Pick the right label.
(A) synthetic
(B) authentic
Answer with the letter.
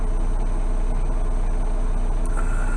B